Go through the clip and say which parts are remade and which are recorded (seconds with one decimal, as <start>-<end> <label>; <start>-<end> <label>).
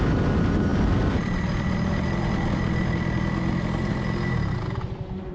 0.0-5.3 recorded